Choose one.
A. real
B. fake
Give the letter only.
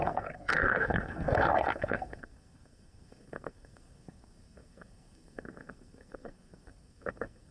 B